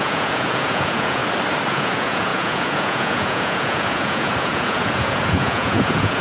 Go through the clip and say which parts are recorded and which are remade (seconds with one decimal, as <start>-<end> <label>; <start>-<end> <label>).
0.0-1.2 remade; 1.2-1.7 recorded; 1.7-6.2 remade